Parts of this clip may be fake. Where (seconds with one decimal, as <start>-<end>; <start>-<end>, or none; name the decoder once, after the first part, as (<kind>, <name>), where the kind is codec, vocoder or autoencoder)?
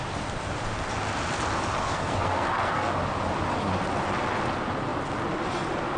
1.8-2.9 (codec, SNAC)